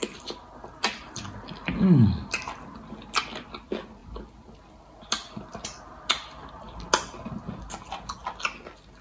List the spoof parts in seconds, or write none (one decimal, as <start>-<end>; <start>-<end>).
none